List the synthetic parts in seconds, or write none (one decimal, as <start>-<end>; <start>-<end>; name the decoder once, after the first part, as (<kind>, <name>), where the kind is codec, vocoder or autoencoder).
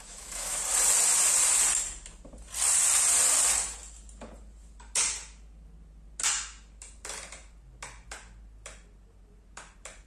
0.0-0.6 (autoencoder, DAC-VAE)